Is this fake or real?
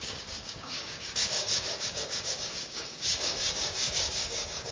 fake